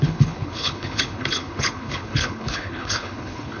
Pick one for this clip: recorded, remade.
remade